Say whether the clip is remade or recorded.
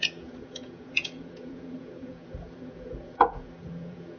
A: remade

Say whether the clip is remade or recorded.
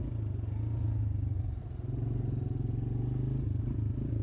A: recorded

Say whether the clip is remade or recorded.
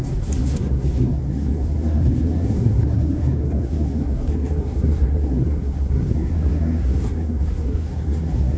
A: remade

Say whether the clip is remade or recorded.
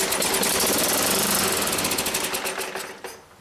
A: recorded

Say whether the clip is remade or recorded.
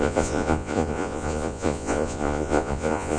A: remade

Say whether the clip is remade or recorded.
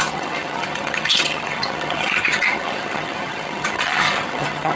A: remade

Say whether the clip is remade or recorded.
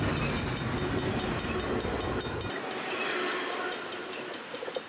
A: recorded